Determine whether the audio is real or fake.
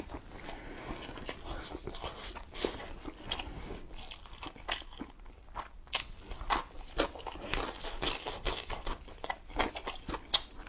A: real